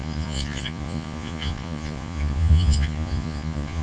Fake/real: fake